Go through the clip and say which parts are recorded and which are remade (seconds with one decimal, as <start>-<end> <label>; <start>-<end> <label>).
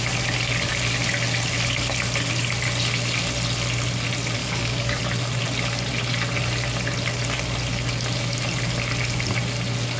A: 0.0-4.4 recorded; 4.4-5.0 remade; 5.0-10.0 recorded